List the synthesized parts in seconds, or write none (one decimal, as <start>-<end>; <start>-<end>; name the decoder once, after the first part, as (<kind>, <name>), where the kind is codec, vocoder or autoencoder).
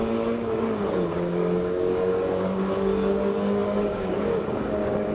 0.0-5.1 (codec, DAC)